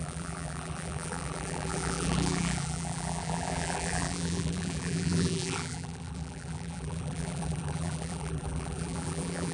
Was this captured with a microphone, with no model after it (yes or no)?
no